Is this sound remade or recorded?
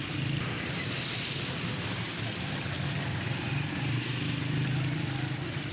recorded